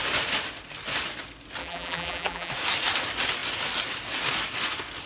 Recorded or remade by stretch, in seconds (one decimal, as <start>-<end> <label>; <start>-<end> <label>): 0.0-1.6 recorded; 1.6-2.5 remade; 2.5-5.1 recorded